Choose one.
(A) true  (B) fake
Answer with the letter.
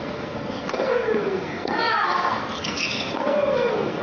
B